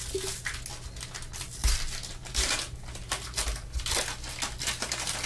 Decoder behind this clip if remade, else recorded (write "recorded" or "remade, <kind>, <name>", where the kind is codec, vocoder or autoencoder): recorded